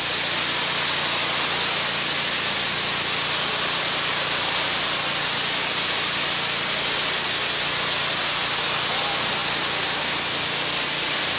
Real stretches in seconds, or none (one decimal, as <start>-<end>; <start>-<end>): 0.0-11.4